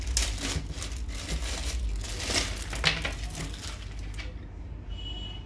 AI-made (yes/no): no